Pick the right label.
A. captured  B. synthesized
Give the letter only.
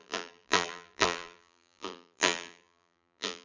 B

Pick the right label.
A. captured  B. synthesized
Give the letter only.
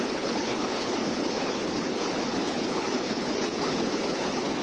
B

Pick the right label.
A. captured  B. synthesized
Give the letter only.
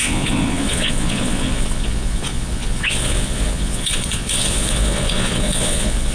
B